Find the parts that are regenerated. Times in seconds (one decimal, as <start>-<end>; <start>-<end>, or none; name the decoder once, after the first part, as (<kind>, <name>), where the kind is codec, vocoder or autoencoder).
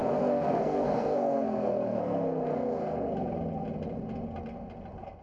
0.0-3.1 (codec, SNAC)